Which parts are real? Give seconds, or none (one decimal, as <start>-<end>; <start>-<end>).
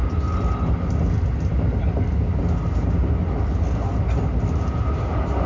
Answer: 0.0-5.5